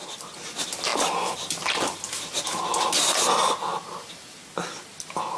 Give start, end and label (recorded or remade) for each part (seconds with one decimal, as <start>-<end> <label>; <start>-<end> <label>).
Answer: 0.0-5.4 recorded